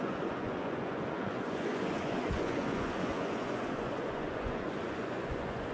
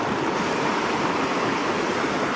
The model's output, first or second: first